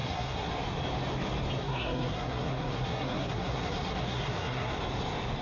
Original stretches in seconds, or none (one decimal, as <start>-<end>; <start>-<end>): 0.5-1.6; 4.8-5.4